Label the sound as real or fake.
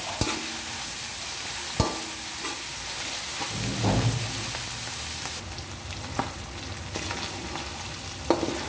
real